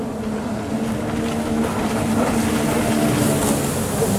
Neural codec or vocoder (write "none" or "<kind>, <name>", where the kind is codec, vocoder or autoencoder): none